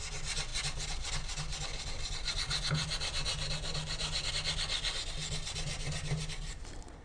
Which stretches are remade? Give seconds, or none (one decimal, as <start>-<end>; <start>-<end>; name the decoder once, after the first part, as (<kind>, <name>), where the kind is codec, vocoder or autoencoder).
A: none